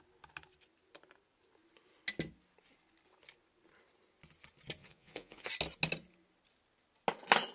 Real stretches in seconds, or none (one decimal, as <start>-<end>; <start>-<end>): 0.0-4.8; 5.5-7.5